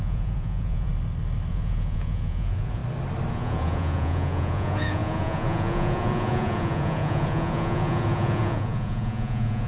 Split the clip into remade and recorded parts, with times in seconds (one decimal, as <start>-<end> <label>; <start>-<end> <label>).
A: 0.0-0.9 remade; 0.9-1.5 recorded; 1.5-2.8 remade; 2.8-3.3 recorded; 3.3-9.7 remade